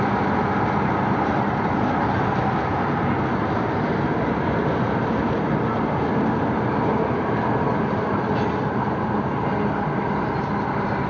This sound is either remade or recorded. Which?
recorded